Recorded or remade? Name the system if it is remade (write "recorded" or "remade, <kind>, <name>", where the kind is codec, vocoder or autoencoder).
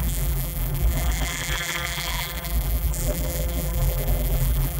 remade, vocoder, BigVGAN v2